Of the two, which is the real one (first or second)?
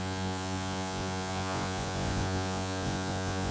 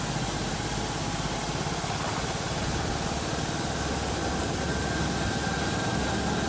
second